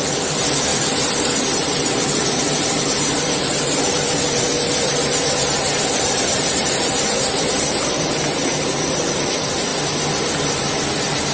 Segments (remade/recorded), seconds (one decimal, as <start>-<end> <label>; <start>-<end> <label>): 0.0-0.7 remade; 0.7-1.4 recorded; 1.4-9.7 remade; 9.7-10.9 recorded; 10.9-11.3 remade